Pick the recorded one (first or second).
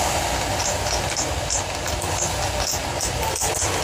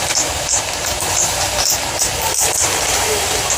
first